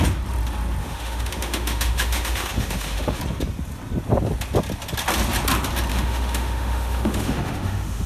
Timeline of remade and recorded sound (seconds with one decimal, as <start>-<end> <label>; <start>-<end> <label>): 0.0-0.8 recorded; 0.8-3.2 remade; 3.2-5.9 recorded; 5.9-8.1 remade